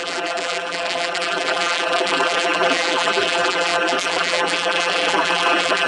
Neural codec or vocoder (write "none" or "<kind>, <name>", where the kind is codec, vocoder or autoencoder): vocoder, BigVGAN v2